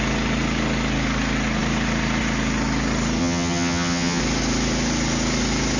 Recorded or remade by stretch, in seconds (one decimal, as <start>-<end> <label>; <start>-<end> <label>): 0.0-3.2 recorded; 3.2-4.2 remade; 4.2-5.8 recorded